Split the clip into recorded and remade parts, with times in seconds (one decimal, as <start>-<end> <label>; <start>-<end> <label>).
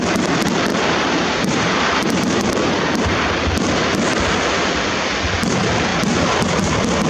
0.0-0.7 recorded; 0.7-3.4 remade; 3.4-7.1 recorded